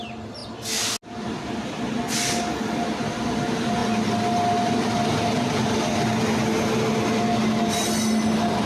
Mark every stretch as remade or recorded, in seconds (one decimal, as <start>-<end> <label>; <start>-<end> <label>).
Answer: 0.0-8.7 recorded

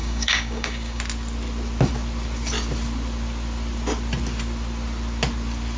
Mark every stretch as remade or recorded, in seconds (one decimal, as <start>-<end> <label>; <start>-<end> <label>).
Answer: 0.0-1.0 remade; 1.0-5.8 recorded

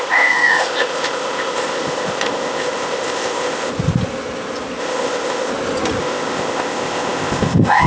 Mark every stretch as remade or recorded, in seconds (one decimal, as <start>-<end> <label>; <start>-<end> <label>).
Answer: 0.0-3.7 remade; 3.7-4.8 recorded; 4.8-5.5 remade; 5.5-6.0 recorded; 6.0-7.9 remade

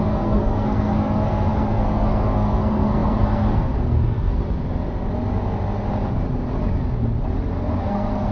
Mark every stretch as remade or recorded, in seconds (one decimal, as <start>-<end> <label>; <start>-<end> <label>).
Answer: 0.0-4.4 remade; 4.4-7.8 recorded; 7.8-8.3 remade

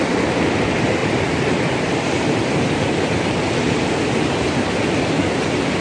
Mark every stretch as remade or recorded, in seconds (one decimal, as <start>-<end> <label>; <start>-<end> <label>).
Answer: 0.0-1.0 recorded; 1.0-3.9 remade; 3.9-5.8 recorded